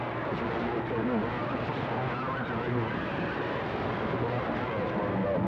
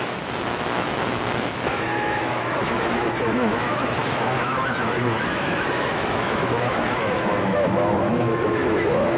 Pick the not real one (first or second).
second